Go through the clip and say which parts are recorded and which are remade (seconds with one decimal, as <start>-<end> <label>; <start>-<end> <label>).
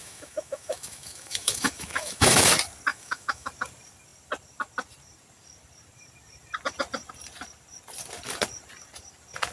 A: 0.0-2.5 remade; 2.5-2.9 recorded; 2.9-3.5 remade; 3.5-9.5 recorded